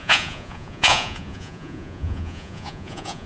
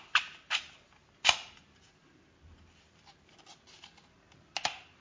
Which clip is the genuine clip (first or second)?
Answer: second